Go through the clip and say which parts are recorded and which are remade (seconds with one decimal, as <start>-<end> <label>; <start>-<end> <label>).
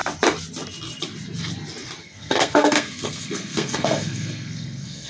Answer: 0.0-2.0 recorded; 2.0-5.1 remade